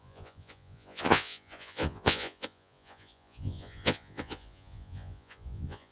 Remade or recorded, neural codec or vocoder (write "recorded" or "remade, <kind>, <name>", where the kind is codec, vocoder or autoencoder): remade, vocoder, Vocos